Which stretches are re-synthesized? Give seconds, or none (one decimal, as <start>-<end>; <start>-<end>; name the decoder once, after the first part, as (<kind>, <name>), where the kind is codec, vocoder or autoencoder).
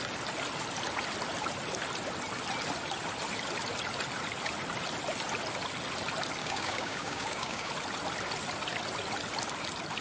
6.4-7.7 (codec, DAC)